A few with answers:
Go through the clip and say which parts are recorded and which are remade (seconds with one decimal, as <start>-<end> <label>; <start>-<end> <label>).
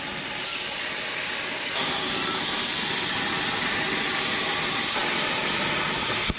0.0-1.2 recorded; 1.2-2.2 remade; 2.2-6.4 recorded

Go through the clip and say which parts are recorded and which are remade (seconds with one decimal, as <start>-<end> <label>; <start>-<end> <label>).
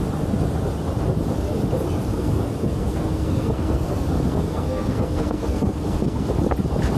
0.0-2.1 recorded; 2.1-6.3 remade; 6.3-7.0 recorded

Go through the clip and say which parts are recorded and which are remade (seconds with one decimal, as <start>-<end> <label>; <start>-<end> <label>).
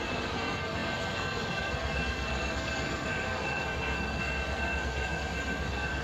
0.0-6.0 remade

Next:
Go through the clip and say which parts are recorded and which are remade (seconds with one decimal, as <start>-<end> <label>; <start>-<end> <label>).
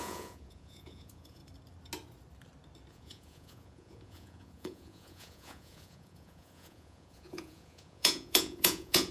0.0-1.4 remade; 1.4-2.9 recorded; 2.9-9.1 remade